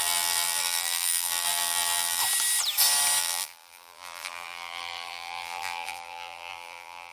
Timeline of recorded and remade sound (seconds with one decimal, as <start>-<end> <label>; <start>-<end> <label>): 0.0-2.2 remade; 2.2-3.2 recorded; 3.2-7.1 remade